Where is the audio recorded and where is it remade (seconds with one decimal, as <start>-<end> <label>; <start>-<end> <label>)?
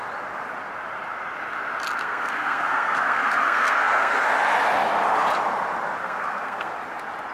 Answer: 0.0-2.0 recorded; 2.0-4.1 remade; 4.1-6.0 recorded; 6.0-6.7 remade; 6.7-7.3 recorded